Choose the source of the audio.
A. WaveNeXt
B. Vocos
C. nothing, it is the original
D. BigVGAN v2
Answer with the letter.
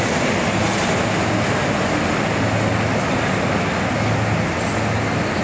C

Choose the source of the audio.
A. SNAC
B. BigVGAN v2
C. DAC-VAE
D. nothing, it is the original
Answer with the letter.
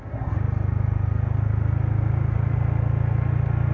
D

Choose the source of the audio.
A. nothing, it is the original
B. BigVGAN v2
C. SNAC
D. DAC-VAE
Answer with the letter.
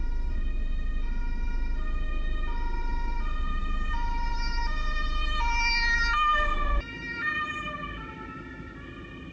A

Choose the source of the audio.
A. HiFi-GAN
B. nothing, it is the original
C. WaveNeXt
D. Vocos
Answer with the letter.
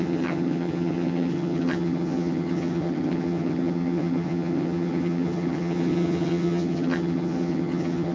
A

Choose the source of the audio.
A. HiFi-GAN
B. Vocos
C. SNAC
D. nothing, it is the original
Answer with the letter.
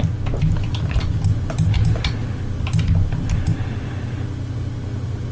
D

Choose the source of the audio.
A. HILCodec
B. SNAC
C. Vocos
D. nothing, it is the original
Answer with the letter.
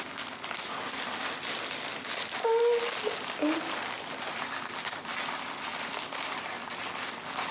D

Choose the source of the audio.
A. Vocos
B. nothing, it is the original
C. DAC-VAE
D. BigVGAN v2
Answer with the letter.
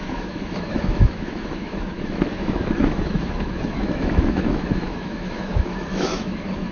C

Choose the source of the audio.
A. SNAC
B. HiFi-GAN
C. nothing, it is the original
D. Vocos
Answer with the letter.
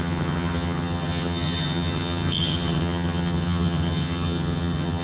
B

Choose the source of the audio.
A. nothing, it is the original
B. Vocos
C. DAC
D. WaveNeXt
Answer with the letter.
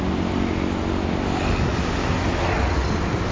A